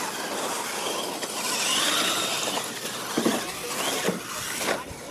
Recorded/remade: recorded